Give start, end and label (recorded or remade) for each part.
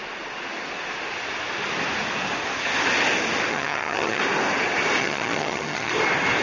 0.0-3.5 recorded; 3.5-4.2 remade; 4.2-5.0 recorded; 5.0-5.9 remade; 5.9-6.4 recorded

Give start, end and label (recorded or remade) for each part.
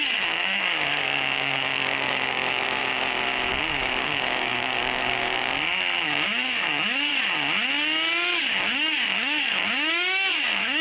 0.0-2.8 remade; 2.8-3.5 recorded; 3.5-7.1 remade; 7.1-8.4 recorded; 8.4-10.8 remade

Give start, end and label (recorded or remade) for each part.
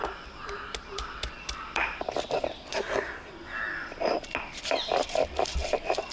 0.0-2.7 recorded; 2.7-3.3 remade; 3.3-6.1 recorded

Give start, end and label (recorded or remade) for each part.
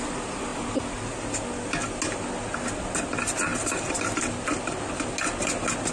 0.0-5.9 recorded